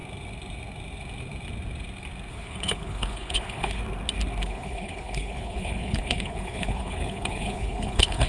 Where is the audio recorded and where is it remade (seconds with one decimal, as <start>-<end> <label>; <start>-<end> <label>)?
0.0-2.3 recorded; 2.3-3.8 remade; 3.8-4.4 recorded; 4.4-8.3 remade